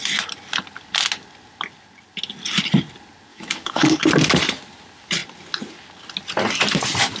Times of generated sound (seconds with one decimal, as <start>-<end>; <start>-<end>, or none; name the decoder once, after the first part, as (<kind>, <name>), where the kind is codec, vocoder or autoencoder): 3.3-4.1 (codec, DAC)

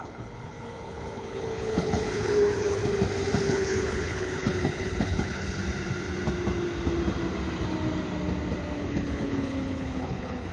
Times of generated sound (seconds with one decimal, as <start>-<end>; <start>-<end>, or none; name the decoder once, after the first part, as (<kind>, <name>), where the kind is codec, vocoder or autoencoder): 0.0-2.8 (codec, HILCodec); 3.4-5.6; 8.8-10.5

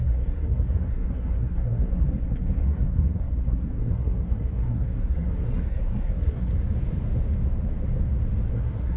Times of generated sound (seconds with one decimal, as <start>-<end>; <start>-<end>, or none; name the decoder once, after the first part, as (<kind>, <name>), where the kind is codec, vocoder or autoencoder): 0.0-6.5 (codec, SNAC); 8.5-9.0